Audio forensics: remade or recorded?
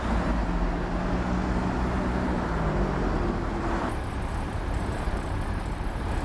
recorded